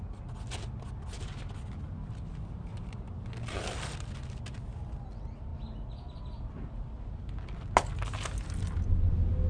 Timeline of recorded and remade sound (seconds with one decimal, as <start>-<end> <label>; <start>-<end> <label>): 0.0-9.5 recorded